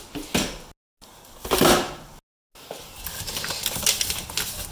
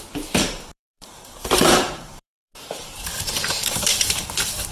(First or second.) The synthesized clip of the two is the second